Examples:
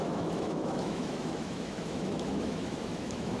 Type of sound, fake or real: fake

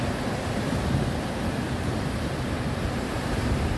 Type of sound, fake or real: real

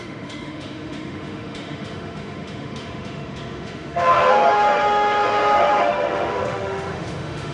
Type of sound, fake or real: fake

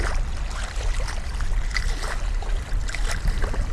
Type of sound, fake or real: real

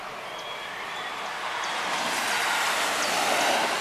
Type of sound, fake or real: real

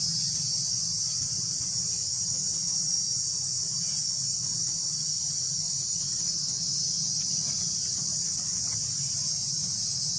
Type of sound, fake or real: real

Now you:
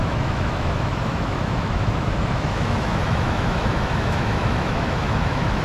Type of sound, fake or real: fake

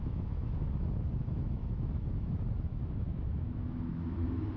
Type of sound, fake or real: fake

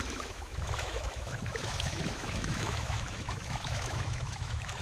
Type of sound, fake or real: fake